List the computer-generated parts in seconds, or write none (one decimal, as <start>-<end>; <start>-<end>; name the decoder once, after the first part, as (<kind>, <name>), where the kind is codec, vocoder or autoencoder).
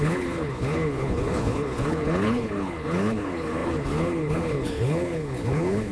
0.0-5.9 (codec, HILCodec)